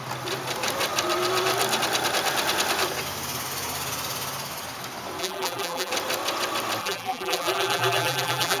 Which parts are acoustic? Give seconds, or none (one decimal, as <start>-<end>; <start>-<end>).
0.0-5.2; 5.9-6.8